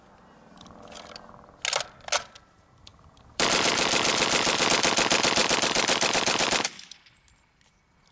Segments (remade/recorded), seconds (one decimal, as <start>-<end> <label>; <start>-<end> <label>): 0.0-2.9 recorded; 2.9-4.7 remade; 4.7-5.4 recorded; 5.4-8.1 remade